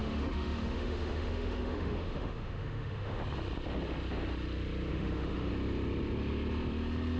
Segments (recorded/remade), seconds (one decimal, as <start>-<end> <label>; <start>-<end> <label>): 0.0-3.2 remade; 3.2-4.9 recorded; 4.9-5.5 remade; 5.5-7.2 recorded